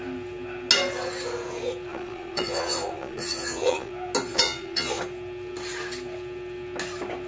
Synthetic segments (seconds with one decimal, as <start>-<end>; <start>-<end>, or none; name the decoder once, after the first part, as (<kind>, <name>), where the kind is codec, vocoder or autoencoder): 1.9-3.9 (vocoder, Vocos); 4.3-5.0